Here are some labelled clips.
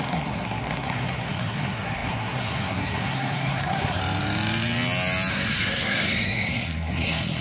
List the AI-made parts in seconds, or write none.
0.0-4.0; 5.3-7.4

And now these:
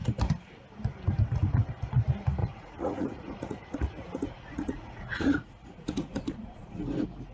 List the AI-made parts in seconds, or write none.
2.4-6.8